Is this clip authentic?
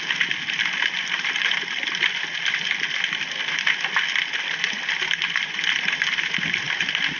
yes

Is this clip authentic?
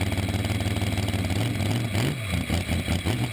yes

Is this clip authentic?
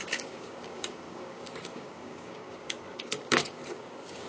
no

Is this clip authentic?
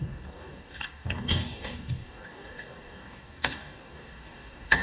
no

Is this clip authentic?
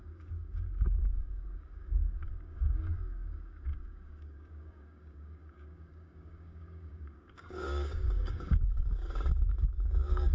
no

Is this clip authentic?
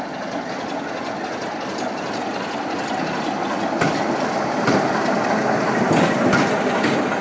yes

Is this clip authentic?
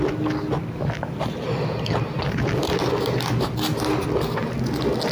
yes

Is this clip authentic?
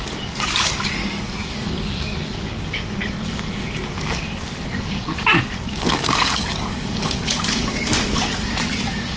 no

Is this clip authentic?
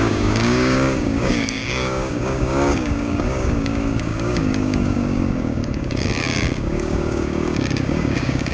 no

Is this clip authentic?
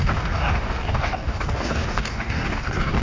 no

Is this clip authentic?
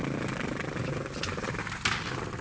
yes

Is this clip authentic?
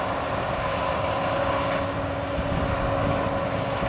yes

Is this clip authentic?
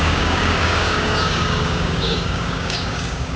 no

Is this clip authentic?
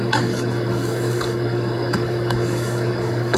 no